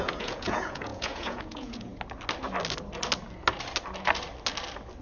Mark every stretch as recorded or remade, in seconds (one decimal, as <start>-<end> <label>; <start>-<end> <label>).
0.0-1.9 remade; 1.9-5.0 recorded